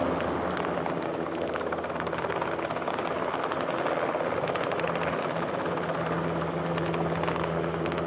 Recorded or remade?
recorded